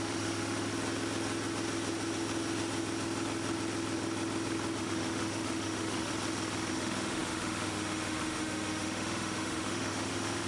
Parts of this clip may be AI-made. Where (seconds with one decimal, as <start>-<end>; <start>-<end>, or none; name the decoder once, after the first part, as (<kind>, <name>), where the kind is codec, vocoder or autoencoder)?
0.0-0.7 (autoencoder, DAC-VAE); 4.8-6.1; 6.7-10.5